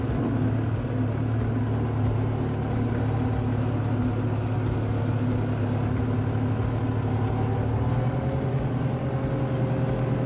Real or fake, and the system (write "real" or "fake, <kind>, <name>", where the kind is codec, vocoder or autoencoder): real